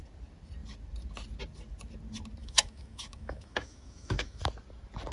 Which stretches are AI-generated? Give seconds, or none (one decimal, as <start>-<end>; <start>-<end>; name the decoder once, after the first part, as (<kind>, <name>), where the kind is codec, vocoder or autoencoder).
2.4-4.4 (autoencoder, DAC-VAE)